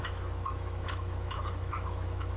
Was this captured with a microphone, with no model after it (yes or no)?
no